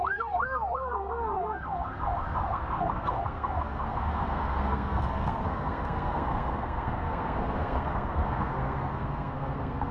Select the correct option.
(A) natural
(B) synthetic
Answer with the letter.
B